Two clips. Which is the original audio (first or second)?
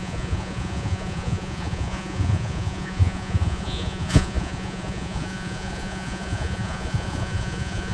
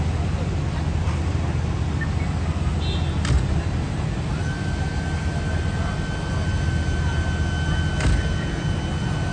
second